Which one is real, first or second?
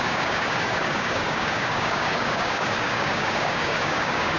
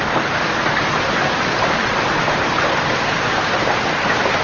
second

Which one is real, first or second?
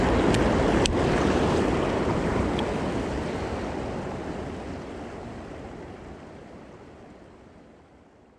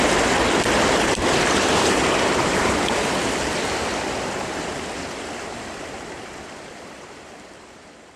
first